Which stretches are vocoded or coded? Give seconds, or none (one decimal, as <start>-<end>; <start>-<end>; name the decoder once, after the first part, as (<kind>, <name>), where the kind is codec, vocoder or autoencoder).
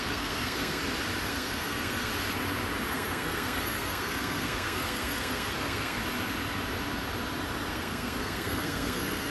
0.0-0.8 (codec, SNAC); 1.3-2.1; 2.9-6.0; 7.7-9.3